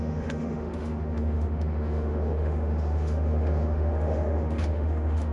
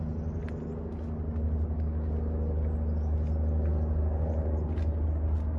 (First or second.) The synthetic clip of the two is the first